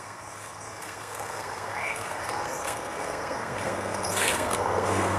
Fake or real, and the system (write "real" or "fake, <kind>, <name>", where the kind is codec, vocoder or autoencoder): fake, codec, SNAC